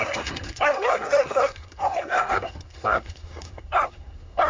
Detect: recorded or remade remade